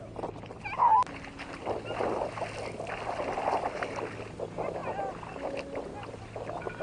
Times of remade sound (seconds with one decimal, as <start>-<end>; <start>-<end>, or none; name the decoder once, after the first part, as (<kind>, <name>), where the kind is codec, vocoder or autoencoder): none